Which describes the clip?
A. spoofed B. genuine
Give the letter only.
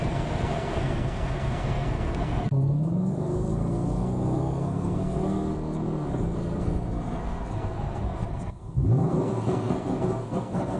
A